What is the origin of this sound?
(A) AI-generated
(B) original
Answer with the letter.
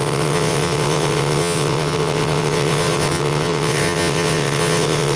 A